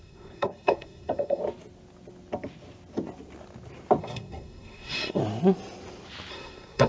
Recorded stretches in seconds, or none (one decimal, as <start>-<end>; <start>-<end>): 1.4-4.0; 5.2-6.3